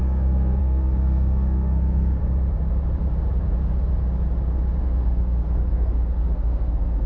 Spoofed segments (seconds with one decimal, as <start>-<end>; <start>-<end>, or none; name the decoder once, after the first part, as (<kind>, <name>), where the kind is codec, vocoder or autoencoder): 0.0-2.2 (codec, SNAC); 4.8-7.1